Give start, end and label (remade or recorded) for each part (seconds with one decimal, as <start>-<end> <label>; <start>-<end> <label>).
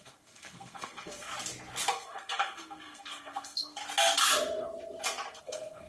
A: 0.0-1.3 remade; 1.3-1.9 recorded; 1.9-3.8 remade; 3.8-5.4 recorded; 5.4-5.9 remade